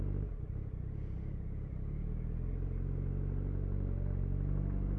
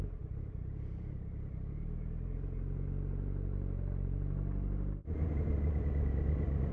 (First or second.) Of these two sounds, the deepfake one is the second